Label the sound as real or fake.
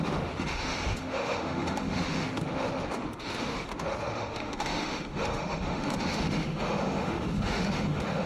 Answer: fake